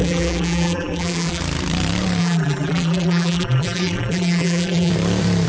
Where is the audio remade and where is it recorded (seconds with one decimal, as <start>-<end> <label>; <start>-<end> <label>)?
0.0-1.4 remade; 1.4-2.2 recorded; 2.2-4.9 remade; 4.9-5.5 recorded